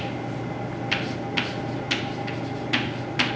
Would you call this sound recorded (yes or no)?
yes